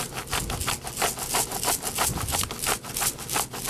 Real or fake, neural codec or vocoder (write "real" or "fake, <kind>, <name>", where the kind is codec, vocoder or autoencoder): real